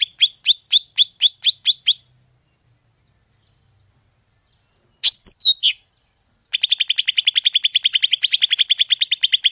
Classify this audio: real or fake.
real